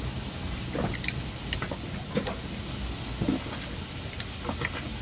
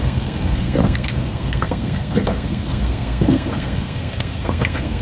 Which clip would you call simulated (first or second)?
second